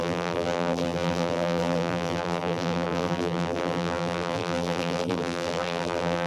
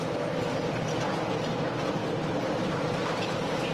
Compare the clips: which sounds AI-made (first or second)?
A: first